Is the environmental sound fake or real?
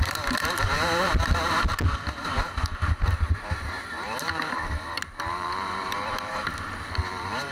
fake